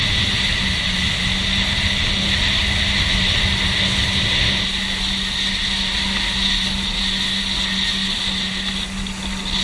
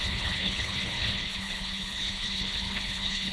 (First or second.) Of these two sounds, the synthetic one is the second